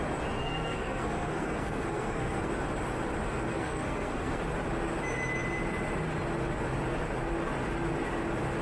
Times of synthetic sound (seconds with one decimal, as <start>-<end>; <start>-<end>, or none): 0.4-2.5; 3.5-4.4